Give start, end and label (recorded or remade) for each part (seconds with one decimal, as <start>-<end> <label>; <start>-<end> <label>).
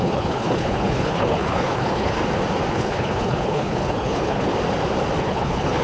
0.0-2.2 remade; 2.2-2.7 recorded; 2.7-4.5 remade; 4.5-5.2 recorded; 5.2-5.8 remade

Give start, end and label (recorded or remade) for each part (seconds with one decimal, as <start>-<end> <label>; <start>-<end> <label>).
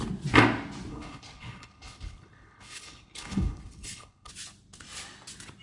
0.0-0.9 recorded; 0.9-4.3 remade; 4.3-5.6 recorded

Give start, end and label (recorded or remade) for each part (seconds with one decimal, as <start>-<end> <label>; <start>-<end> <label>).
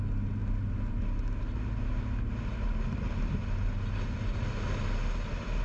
0.0-5.6 recorded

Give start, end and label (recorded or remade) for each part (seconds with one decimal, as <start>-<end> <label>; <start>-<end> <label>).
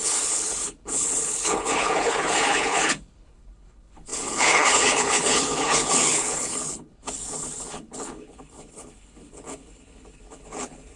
0.0-11.0 remade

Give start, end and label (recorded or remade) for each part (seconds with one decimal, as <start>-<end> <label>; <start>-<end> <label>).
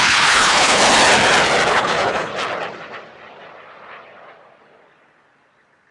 0.0-0.8 remade; 0.8-1.7 recorded; 1.7-2.3 remade; 2.3-5.9 recorded